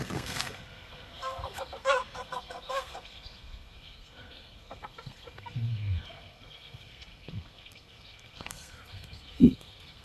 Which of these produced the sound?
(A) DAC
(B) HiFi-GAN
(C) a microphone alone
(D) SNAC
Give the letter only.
D